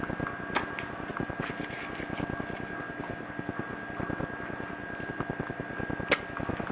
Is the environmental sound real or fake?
real